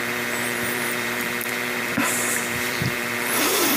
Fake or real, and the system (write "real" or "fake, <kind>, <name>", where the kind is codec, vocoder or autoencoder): fake, vocoder, BigVGAN v2